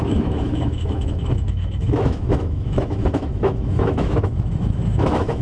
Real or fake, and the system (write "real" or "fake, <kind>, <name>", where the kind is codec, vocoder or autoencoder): fake, autoencoder, DAC-VAE